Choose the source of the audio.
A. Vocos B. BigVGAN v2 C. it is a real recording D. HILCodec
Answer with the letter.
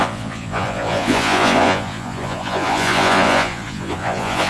A